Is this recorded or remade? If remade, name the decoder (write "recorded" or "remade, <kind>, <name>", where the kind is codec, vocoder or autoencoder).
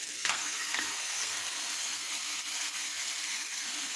remade, codec, SNAC